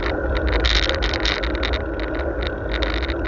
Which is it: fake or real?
real